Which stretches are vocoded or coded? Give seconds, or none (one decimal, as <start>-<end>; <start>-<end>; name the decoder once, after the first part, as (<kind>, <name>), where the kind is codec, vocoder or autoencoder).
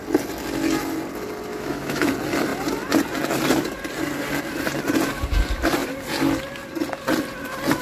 1.5-2.1 (autoencoder, DAC-VAE)